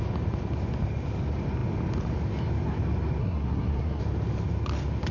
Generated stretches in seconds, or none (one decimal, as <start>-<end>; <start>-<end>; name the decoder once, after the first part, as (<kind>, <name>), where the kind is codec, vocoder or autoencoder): 3.2-4.0 (codec, SNAC)